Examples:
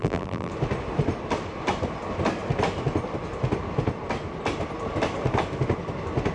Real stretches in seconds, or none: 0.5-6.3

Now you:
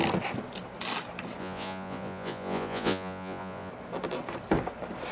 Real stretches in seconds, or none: 0.0-1.4; 3.7-5.1

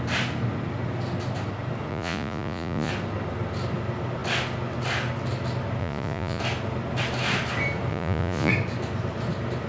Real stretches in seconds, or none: 0.0-1.9; 2.9-5.8; 6.4-7.9; 8.5-9.7

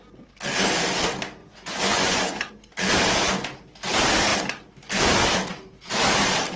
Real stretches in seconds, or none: 0.0-1.4; 2.5-6.6

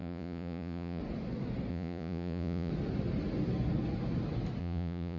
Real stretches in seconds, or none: 1.0-1.7; 2.7-4.6

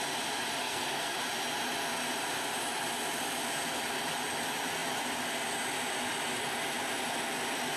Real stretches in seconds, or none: 0.0-0.6; 1.2-7.8

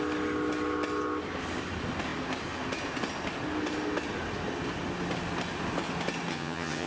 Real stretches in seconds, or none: 0.0-6.3

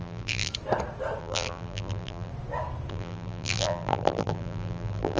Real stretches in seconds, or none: 0.5-1.2; 2.3-2.9